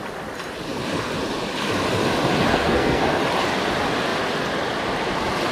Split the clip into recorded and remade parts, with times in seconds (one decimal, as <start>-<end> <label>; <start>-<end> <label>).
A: 0.0-2.5 recorded; 2.5-3.2 remade; 3.2-5.5 recorded